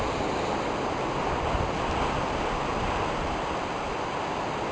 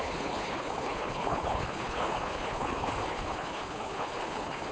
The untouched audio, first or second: first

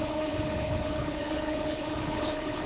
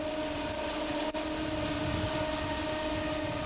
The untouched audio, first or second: second